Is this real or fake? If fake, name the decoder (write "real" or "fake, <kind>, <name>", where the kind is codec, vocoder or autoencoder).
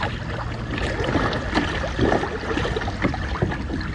real